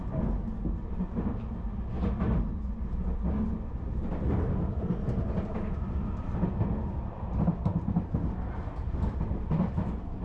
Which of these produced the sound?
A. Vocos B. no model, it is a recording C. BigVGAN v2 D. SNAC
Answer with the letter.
B